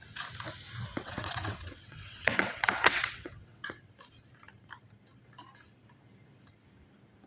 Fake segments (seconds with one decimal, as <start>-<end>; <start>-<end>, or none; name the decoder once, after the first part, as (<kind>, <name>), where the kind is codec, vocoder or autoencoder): 0.9-3.9 (vocoder, WaveNeXt)